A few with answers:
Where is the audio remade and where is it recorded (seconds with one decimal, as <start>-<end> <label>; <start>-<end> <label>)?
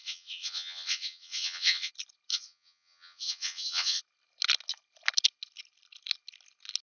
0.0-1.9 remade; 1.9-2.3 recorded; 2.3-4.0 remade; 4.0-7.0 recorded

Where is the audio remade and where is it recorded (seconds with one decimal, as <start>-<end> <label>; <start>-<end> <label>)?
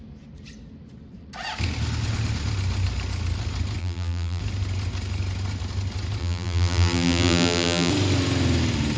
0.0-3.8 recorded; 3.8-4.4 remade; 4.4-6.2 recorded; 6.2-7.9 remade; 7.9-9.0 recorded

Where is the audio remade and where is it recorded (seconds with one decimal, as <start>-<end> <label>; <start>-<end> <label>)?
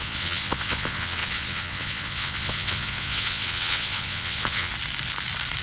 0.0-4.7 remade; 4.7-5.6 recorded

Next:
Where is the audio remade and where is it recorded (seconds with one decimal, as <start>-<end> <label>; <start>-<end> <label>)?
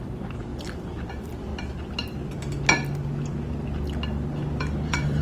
0.0-0.5 remade; 0.5-1.1 recorded; 1.1-1.5 remade; 1.5-4.6 recorded; 4.6-5.2 remade